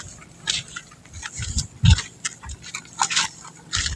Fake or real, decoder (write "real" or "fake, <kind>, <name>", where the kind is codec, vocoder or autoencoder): real